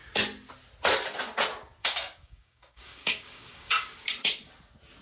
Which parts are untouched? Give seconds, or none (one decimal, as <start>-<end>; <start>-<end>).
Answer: 0.0-1.8; 3.7-5.0